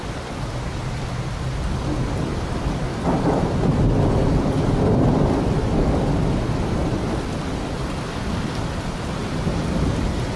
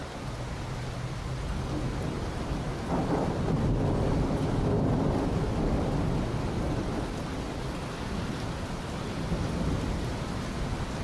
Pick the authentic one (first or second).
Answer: second